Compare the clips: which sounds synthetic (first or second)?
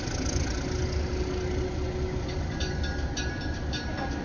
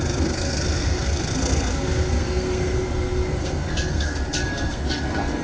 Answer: second